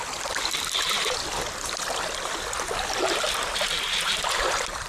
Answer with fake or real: real